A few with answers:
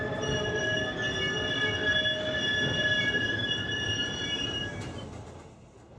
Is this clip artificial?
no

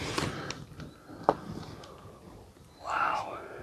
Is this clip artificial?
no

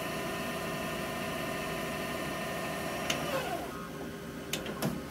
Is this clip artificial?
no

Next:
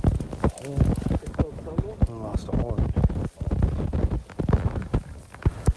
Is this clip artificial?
no